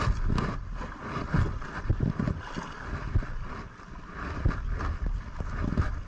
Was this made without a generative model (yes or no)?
yes